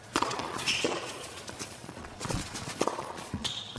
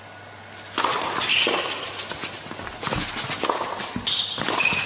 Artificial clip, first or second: first